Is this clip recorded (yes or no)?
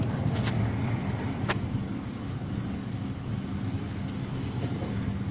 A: no